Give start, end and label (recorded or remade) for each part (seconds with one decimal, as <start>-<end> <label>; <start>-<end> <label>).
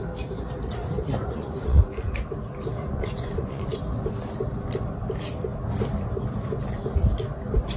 0.0-0.8 recorded; 0.8-1.8 remade; 1.8-2.8 recorded; 2.8-3.8 remade; 3.8-7.8 recorded